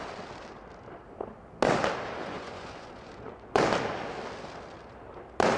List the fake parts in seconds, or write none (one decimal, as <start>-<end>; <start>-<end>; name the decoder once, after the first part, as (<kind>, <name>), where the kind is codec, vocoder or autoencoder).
2.2-3.6 (vocoder, Vocos)

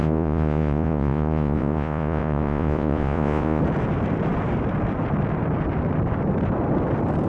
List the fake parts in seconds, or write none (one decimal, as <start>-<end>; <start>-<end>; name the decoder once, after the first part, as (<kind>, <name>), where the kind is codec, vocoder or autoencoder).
0.0-3.6 (vocoder, Vocos)

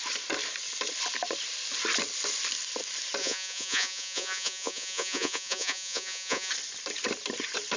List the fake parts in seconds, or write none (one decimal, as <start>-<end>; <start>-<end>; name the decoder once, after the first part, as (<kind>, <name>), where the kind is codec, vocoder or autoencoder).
3.2-6.5 (vocoder, Vocos)

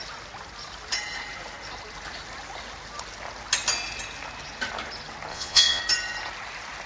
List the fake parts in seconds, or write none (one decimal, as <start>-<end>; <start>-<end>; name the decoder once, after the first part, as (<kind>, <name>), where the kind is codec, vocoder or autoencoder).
5.3-5.8 (vocoder, Vocos)

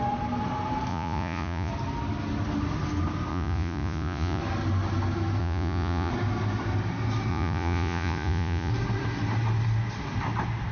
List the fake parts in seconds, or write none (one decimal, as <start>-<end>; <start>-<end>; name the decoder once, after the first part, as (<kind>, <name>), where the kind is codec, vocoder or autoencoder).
0.9-1.7 (vocoder, Vocos); 3.3-4.4; 5.4-6.1; 7.3-8.7

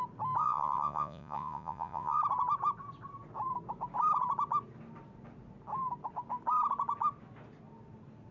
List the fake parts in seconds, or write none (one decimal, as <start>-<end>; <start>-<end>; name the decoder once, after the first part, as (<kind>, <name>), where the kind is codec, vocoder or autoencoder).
0.4-2.2 (vocoder, Vocos)

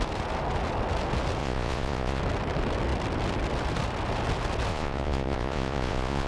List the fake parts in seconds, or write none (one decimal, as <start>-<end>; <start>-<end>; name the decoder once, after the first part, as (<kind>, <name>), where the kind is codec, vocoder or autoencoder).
1.4-2.2 (vocoder, Vocos); 4.7-6.3

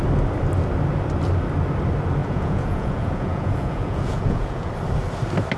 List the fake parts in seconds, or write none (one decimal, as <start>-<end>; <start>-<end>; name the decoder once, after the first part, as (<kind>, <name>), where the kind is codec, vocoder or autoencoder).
2.2-4.7 (vocoder, Vocos)